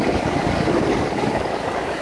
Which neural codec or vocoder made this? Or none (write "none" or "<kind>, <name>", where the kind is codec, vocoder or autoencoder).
codec, DAC